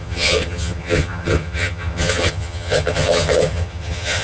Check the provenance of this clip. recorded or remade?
remade